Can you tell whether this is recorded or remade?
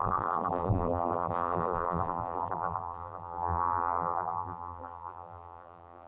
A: remade